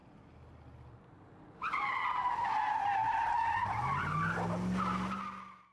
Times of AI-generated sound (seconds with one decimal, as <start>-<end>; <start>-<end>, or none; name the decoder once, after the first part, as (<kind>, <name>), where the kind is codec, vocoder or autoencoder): none